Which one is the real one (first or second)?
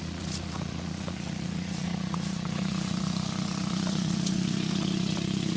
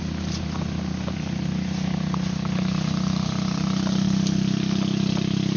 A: second